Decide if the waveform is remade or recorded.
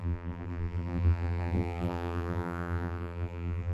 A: remade